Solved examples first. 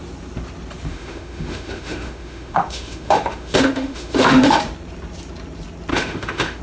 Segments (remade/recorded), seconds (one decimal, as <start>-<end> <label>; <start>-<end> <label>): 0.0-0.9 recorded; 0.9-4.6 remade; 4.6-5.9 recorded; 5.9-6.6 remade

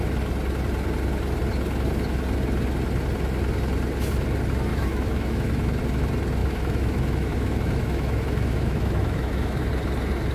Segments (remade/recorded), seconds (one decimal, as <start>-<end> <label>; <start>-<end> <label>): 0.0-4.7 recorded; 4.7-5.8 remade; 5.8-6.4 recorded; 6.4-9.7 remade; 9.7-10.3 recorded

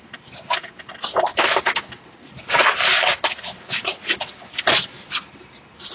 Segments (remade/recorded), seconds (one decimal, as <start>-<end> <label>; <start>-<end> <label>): 0.0-1.3 recorded; 1.3-2.0 remade; 2.0-5.9 recorded

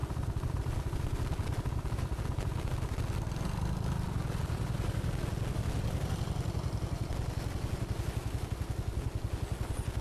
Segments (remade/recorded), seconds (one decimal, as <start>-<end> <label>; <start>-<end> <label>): 0.0-10.0 recorded

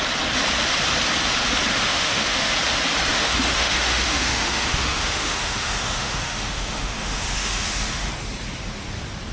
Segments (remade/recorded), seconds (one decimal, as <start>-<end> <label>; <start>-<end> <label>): 0.0-1.7 recorded; 1.7-2.5 remade; 2.5-3.1 recorded; 3.1-8.1 remade; 8.1-9.3 recorded

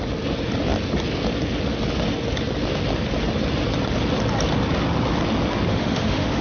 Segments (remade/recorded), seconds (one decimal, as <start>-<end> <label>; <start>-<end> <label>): 0.0-5.7 recorded; 5.7-6.4 remade